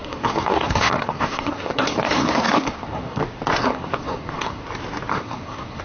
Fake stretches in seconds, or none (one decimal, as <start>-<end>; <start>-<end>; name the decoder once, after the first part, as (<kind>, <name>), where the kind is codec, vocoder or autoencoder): 0.0-3.2 (codec, SNAC); 3.6-4.6; 5.1-5.8